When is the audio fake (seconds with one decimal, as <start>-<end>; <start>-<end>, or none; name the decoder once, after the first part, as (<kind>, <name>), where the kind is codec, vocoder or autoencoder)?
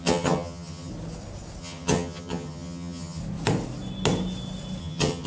0.0-0.9 (vocoder, HiFi-GAN); 1.6-3.2; 4.8-5.3